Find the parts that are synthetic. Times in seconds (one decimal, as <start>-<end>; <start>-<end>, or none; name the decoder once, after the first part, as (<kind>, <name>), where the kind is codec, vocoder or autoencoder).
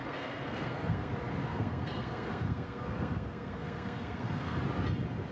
0.0-1.1 (codec, SNAC); 1.5-4.6